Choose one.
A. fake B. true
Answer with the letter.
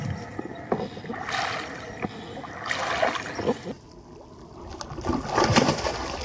B